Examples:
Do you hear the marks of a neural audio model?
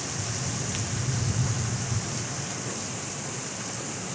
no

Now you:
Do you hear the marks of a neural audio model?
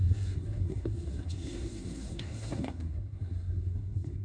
yes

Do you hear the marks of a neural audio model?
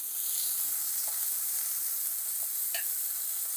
no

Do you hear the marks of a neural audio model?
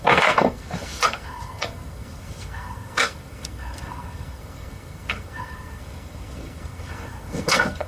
yes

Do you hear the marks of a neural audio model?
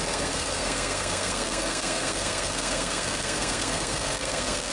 yes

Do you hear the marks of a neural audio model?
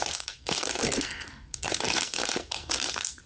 yes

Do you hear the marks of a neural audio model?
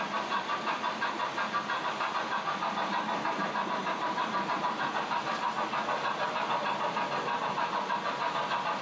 no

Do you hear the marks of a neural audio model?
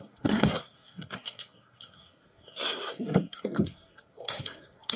yes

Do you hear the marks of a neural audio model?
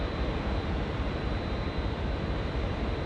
no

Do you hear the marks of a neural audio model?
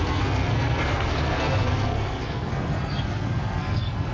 yes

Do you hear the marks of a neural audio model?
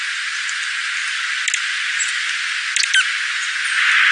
no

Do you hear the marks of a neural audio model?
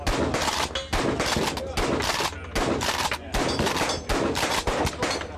no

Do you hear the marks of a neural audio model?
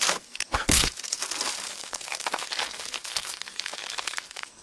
yes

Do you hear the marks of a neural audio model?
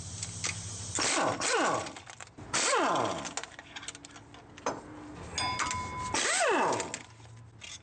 no